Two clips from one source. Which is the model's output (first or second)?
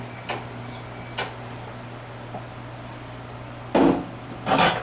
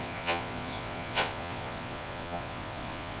second